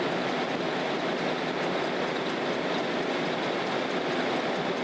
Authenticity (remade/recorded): recorded